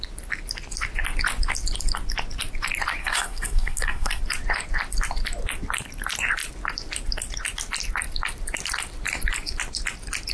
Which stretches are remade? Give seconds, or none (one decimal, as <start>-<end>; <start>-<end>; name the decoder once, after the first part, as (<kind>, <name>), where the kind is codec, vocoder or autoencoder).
3.0-4.2 (codec, SNAC)